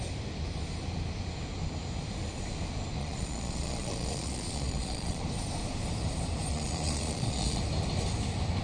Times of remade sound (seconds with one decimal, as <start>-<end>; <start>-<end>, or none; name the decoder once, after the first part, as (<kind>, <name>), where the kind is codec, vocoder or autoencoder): 3.0-5.2 (vocoder, Vocos); 6.5-7.6